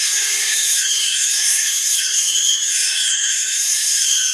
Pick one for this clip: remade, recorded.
remade